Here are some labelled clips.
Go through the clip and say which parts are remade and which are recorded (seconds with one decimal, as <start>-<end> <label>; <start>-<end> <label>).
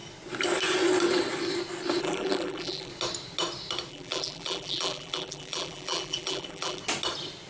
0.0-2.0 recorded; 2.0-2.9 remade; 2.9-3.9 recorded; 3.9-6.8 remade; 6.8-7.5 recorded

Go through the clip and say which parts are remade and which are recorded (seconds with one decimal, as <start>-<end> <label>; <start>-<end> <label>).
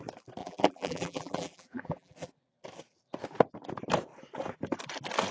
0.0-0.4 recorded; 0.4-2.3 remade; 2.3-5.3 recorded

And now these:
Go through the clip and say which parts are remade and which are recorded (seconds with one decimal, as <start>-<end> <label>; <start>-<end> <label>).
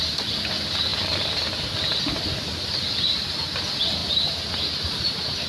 0.0-5.5 recorded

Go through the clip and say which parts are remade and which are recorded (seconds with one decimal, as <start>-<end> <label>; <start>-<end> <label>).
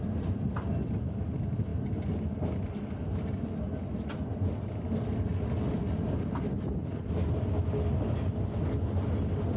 0.0-1.7 recorded; 1.7-3.6 remade; 3.6-6.8 recorded; 6.8-7.3 remade; 7.3-9.6 recorded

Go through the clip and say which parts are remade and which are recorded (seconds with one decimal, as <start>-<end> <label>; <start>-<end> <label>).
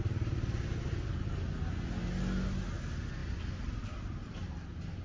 0.0-5.0 recorded